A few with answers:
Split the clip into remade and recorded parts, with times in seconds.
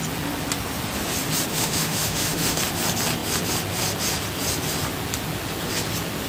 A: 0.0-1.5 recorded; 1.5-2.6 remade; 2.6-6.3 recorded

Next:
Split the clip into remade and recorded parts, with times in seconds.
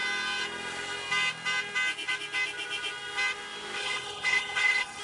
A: 0.0-3.8 recorded; 3.8-5.0 remade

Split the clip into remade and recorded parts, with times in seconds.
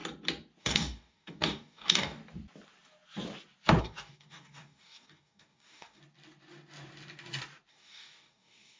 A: 0.0-0.6 recorded; 0.6-2.2 remade; 2.2-3.8 recorded; 3.8-6.0 remade; 6.0-7.7 recorded; 7.7-8.8 remade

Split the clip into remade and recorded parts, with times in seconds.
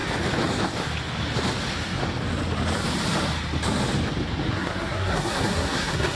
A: 0.0-4.5 recorded; 4.5-6.2 remade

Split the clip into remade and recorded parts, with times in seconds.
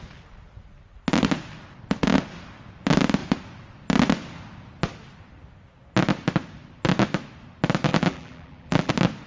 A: 0.0-7.9 recorded; 7.9-8.9 remade; 8.9-9.3 recorded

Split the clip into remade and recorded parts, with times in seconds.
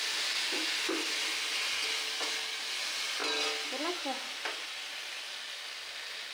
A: 0.0-6.3 recorded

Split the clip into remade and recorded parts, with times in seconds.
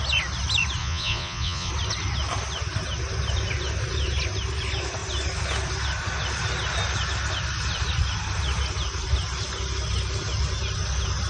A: 0.0-0.8 recorded; 0.8-1.7 remade; 1.7-11.3 recorded